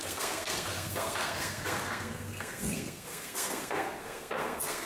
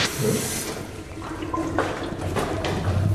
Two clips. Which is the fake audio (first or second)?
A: first